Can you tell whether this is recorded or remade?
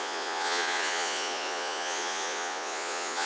remade